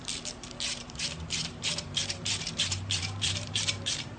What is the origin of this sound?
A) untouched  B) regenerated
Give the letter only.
B